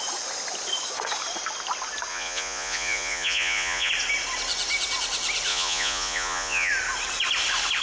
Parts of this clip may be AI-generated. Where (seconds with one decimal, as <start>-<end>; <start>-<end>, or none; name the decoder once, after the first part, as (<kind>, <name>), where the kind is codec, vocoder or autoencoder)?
2.1-3.9 (vocoder, Vocos); 5.5-6.7